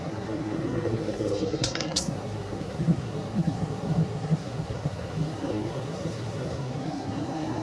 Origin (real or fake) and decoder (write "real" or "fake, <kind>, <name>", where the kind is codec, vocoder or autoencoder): fake, codec, SNAC